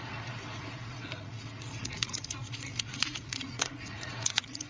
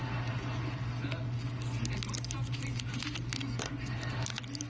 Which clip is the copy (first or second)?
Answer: first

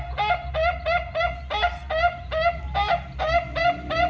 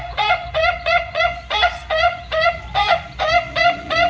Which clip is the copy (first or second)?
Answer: second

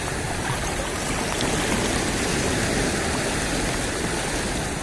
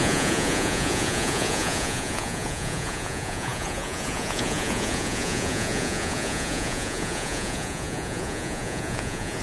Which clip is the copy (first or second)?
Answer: second